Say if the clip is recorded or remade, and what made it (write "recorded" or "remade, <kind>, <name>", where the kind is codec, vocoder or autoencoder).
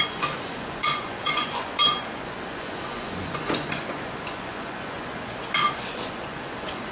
remade, vocoder, Vocos